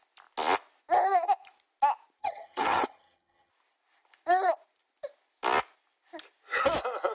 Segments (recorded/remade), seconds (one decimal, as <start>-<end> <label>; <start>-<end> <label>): 0.0-2.2 recorded; 2.2-3.5 remade; 3.5-7.1 recorded